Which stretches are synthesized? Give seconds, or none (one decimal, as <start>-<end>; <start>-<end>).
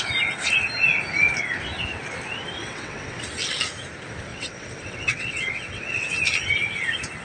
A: 2.6-3.2; 4.3-6.1